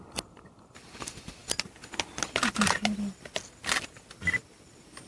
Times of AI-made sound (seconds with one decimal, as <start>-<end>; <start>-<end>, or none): none